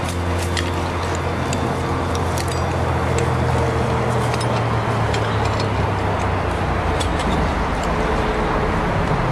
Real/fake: real